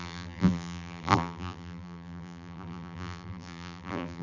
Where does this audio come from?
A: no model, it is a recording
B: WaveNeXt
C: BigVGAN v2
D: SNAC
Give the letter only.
C